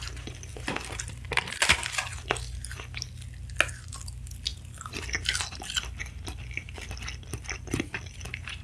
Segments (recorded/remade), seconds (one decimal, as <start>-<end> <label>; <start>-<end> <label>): 0.0-8.6 recorded